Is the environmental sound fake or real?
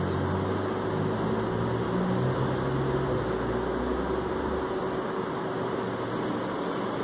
real